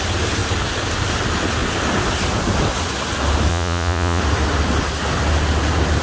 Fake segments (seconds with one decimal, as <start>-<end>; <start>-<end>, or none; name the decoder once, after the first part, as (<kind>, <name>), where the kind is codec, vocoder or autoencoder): 3.5-4.2 (vocoder, Vocos)